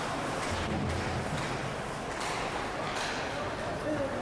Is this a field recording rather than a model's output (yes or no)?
yes